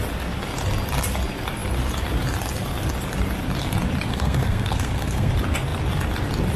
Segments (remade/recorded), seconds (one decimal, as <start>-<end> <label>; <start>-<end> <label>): 0.0-4.1 recorded; 4.1-5.3 remade; 5.3-6.6 recorded